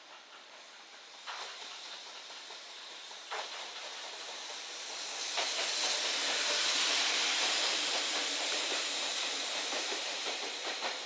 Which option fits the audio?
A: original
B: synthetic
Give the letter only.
B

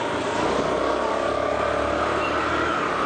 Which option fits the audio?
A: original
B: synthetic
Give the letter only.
B